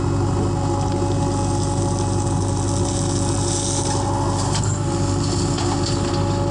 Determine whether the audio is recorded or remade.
recorded